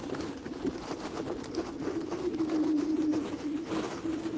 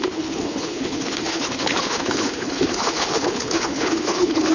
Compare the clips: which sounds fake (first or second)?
second